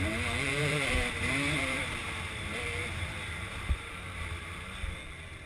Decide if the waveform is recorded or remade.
remade